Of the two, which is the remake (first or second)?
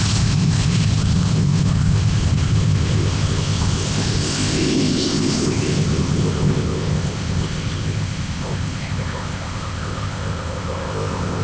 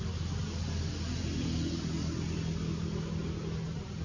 first